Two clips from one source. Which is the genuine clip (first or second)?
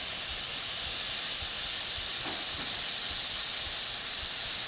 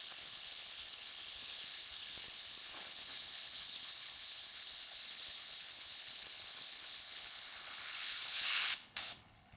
first